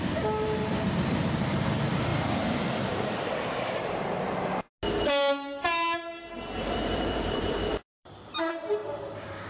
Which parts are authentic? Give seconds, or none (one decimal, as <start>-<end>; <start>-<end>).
2.1-6.3